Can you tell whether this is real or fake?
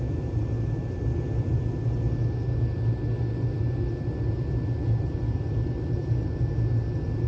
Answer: real